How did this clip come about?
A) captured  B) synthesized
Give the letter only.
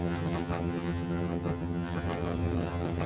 B